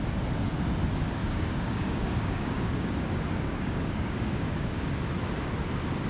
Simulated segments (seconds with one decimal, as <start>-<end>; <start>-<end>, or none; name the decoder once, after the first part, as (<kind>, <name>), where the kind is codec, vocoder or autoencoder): 1.2-4.9 (codec, DAC)

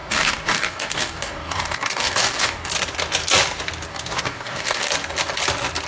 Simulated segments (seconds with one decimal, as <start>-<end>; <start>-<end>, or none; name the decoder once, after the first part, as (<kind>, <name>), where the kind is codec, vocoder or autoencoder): 0.0-2.7 (codec, DAC); 3.9-4.9

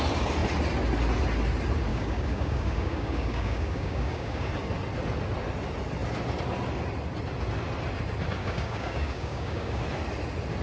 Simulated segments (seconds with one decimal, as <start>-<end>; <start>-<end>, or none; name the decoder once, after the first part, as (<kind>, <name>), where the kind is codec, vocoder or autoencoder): 1.9-4.5 (codec, DAC); 8.4-9.8